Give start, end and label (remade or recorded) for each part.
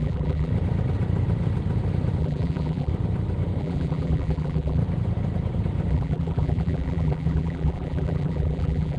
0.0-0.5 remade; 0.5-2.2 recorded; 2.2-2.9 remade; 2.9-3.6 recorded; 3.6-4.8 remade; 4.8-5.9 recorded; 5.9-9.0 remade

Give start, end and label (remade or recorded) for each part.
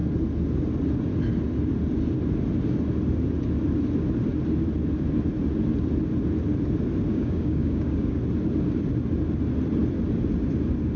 0.0-7.1 recorded; 7.1-8.2 remade; 8.2-11.0 recorded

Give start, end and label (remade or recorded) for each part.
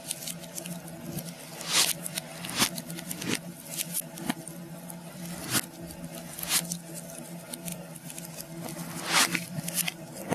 0.0-7.7 recorded; 7.7-10.3 remade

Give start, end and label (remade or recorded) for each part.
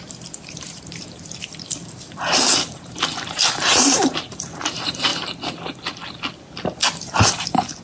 0.0-5.1 remade; 5.1-7.0 recorded; 7.0-7.8 remade